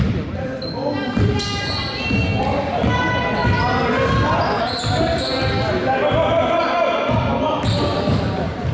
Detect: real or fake real